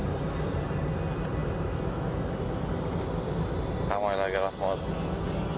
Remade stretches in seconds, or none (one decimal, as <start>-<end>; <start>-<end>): none